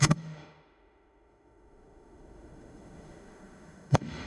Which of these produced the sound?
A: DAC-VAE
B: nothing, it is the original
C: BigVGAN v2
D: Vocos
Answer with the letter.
A